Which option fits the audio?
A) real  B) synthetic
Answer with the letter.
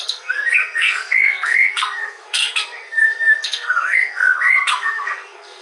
B